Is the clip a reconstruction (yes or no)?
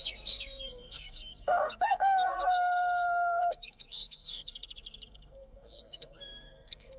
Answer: yes